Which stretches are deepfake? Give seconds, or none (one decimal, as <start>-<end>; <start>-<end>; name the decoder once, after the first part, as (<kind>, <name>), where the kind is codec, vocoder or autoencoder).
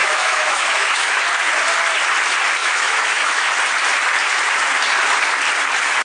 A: 0.0-1.2 (autoencoder, DAC-VAE); 2.6-3.5